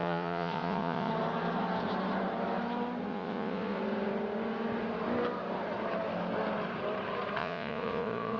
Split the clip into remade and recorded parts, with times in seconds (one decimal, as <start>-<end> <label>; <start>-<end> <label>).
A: 0.0-1.1 remade; 1.1-3.1 recorded; 3.1-3.8 remade; 3.8-7.4 recorded; 7.4-8.4 remade